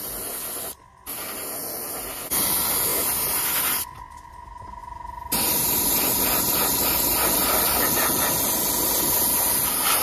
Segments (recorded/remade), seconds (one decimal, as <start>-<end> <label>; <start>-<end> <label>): 0.0-2.9 recorded; 2.9-4.3 remade; 4.3-4.8 recorded; 4.8-6.2 remade; 6.2-10.0 recorded